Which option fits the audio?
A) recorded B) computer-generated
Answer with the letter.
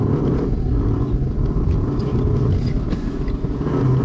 A